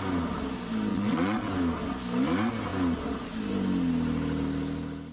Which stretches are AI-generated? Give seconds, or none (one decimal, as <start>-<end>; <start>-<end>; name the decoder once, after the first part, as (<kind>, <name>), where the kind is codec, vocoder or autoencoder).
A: 0.9-1.5 (vocoder, WaveNeXt)